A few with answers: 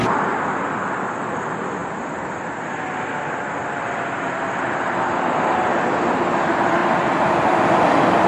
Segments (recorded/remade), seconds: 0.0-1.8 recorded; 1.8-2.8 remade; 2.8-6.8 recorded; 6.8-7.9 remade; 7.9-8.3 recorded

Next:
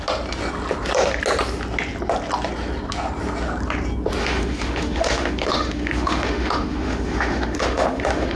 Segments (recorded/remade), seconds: 0.0-4.2 recorded; 4.2-8.4 remade